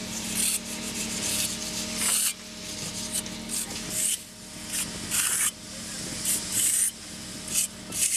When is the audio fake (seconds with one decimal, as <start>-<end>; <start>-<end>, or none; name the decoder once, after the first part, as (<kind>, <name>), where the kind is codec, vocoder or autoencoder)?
0.0-1.3 (vocoder, BigVGAN v2)